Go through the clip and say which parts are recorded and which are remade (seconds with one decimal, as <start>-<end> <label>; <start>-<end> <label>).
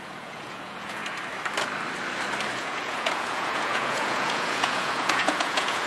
0.0-1.0 remade; 1.0-2.6 recorded; 2.6-5.9 remade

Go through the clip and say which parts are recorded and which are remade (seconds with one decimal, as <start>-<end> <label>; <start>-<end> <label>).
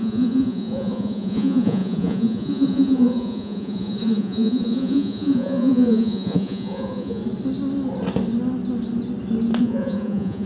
0.0-7.2 remade; 7.2-9.6 recorded; 9.6-10.5 remade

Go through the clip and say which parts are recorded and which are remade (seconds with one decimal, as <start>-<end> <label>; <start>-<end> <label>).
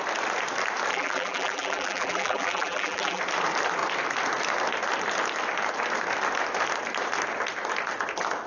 0.0-0.9 recorded; 0.9-3.2 remade; 3.2-8.5 recorded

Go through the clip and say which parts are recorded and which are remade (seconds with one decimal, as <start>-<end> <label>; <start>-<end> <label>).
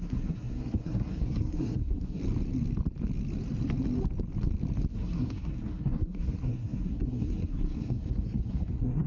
0.0-2.2 remade; 2.2-4.9 recorded; 4.9-9.1 remade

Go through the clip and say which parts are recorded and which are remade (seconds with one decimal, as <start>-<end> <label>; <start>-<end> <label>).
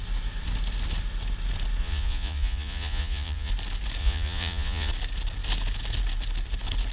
0.0-1.8 recorded; 1.8-3.5 remade; 3.5-4.0 recorded; 4.0-4.9 remade; 4.9-6.9 recorded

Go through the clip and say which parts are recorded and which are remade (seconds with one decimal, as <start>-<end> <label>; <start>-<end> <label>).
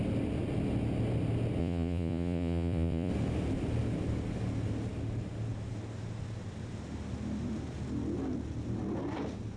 0.0-1.6 recorded; 1.6-3.1 remade; 3.1-9.6 recorded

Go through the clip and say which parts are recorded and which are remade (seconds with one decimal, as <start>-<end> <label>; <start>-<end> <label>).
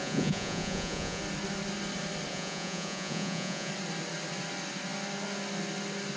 0.0-1.2 remade; 1.2-2.3 recorded; 2.3-3.7 remade; 3.7-6.2 recorded